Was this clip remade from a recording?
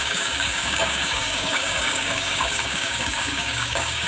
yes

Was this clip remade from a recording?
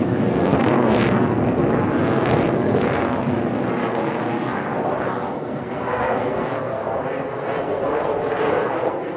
yes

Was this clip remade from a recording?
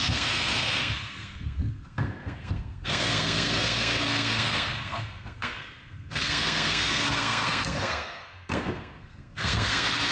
yes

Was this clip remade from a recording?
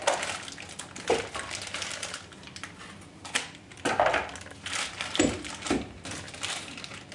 no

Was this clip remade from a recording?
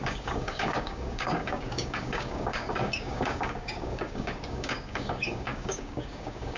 yes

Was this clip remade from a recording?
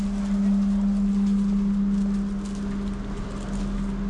no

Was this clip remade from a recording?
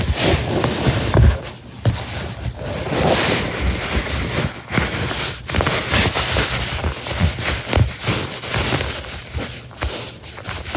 no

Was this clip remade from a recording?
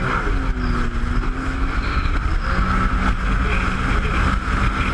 no